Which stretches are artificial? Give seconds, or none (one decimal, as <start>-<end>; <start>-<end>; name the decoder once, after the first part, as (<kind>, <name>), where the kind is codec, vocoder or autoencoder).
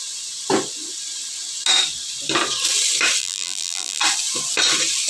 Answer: 3.2-4.0 (vocoder, BigVGAN v2)